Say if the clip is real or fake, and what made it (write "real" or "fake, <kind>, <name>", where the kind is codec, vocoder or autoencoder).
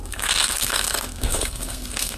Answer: fake, codec, SNAC